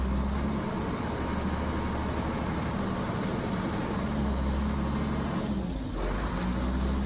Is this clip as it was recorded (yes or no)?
yes